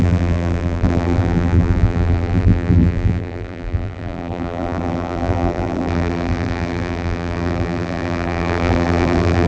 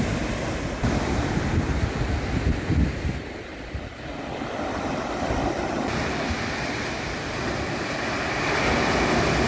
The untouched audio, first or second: second